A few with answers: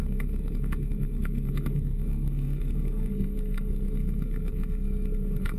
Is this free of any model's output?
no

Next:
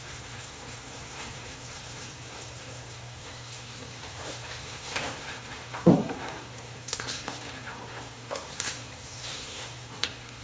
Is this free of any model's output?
no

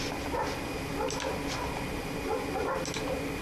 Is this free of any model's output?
yes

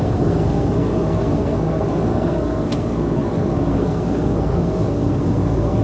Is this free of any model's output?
no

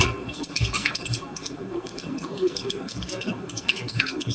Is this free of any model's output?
no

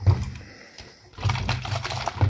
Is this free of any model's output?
yes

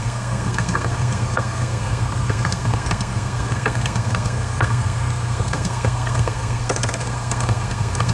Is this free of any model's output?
no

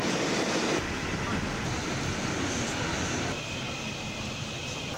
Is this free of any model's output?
yes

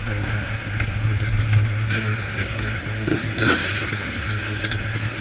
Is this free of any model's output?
no